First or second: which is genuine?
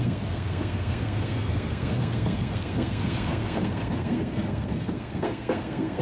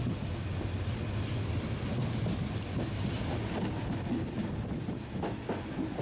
second